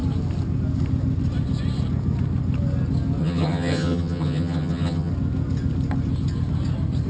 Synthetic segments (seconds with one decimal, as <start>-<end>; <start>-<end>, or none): 3.2-5.1